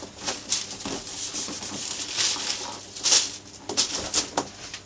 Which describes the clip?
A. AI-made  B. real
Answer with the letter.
B